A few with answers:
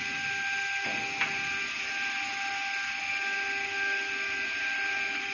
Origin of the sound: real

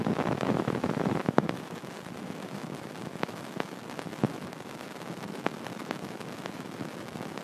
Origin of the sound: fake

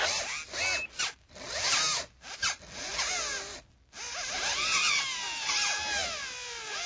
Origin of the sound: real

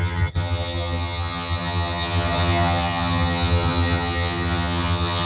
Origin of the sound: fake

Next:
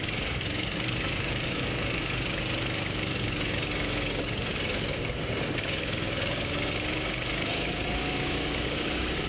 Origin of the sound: fake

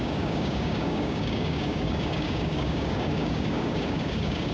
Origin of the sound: fake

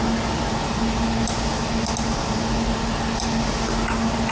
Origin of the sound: real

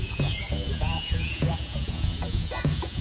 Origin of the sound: fake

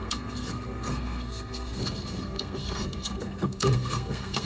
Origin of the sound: fake